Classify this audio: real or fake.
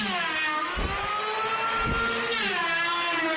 real